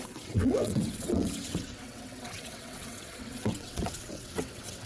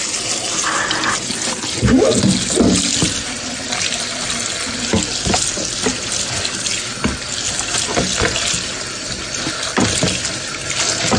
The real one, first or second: second